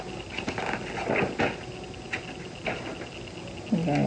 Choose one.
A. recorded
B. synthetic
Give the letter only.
A